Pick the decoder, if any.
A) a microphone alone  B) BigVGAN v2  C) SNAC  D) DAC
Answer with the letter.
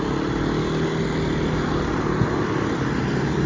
A